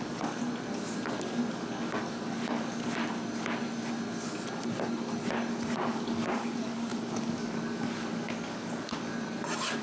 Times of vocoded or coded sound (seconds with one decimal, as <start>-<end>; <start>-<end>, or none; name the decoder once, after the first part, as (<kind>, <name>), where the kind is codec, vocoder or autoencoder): 0.0-0.4 (codec, DAC); 1.5-3.0; 5.5-9.1